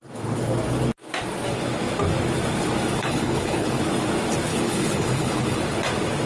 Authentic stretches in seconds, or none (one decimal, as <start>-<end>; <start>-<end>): 0.0-3.0; 3.8-4.5; 5.6-6.3